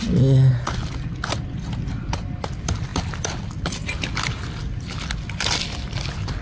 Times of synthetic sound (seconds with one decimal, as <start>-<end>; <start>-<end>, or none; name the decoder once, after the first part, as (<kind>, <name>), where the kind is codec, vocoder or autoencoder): none